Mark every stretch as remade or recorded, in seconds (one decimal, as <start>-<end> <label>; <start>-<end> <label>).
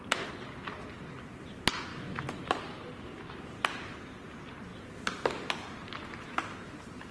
0.0-7.1 recorded